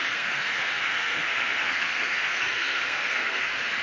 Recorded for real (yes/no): no